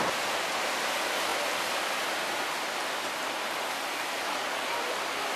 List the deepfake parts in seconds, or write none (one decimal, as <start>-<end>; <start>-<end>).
none

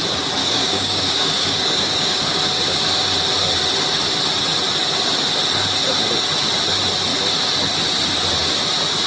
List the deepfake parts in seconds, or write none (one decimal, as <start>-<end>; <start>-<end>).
0.4-2.4

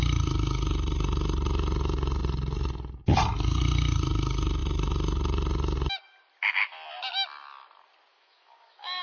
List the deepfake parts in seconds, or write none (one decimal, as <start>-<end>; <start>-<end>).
8.1-9.0

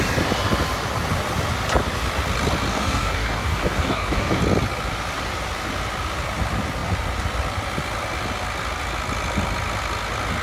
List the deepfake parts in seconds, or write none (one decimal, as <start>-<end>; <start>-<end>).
2.7-4.4

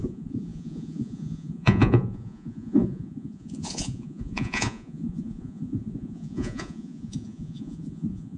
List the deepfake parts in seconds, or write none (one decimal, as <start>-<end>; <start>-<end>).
0.0-8.4

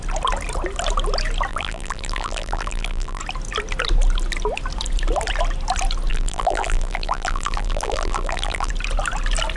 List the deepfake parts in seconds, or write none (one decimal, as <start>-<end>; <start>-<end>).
1.5-3.2; 6.1-8.7